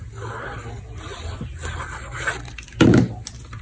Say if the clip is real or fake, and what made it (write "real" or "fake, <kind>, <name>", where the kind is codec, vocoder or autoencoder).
real